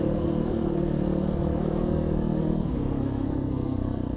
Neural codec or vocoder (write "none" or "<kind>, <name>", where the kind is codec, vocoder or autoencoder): codec, SNAC